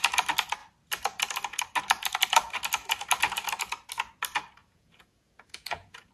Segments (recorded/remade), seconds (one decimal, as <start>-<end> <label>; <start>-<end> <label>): 0.0-4.6 recorded; 4.6-6.1 remade